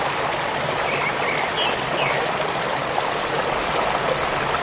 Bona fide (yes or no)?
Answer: yes